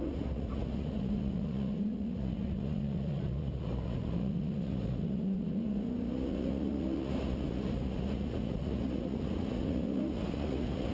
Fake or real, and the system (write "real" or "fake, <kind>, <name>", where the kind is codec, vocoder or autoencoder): fake, vocoder, Vocos